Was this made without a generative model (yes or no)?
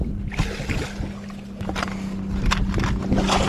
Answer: yes